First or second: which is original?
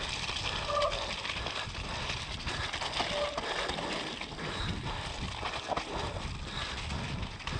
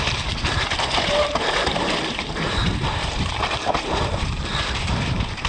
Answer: first